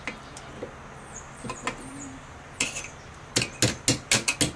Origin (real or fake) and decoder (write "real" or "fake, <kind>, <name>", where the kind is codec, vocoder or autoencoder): real